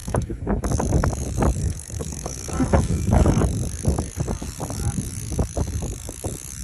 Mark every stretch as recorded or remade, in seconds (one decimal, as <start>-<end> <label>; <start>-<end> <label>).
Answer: 0.0-0.6 remade; 0.6-1.6 recorded; 1.6-3.4 remade; 3.4-6.6 recorded